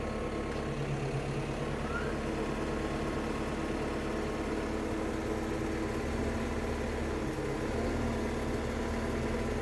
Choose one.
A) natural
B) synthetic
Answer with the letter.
A